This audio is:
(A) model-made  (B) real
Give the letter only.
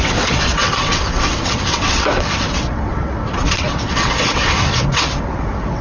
A